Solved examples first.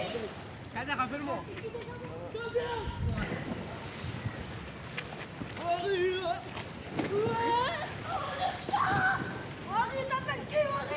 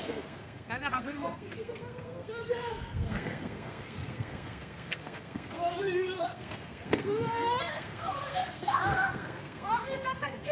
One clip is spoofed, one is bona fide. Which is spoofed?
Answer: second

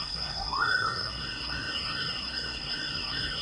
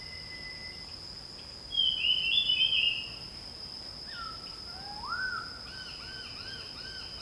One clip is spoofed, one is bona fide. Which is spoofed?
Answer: first